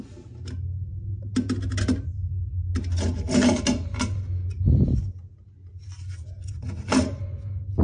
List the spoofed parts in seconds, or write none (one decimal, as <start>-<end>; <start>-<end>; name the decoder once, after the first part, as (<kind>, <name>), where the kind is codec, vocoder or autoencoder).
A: none